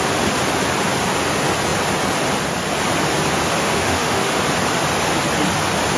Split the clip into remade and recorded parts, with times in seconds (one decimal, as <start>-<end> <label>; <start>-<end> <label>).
0.0-3.6 recorded; 3.6-4.4 remade; 4.4-6.0 recorded